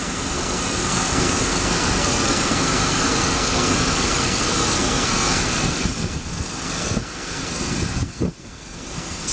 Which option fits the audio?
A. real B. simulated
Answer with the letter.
B